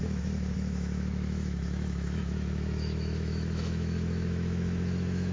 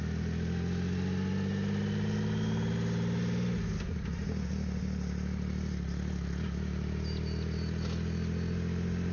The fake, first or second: first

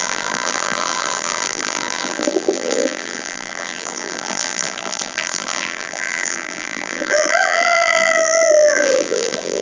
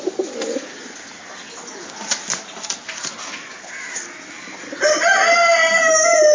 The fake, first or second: first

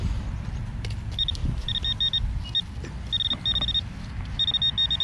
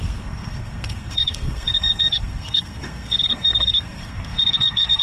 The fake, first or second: second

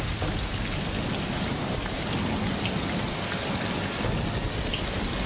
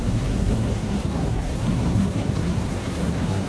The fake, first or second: second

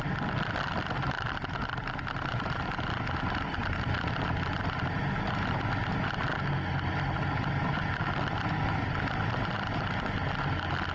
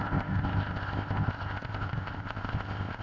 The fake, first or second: second